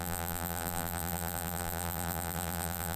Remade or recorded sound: remade